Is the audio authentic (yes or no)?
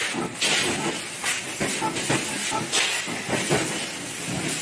yes